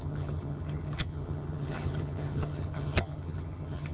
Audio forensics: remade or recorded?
remade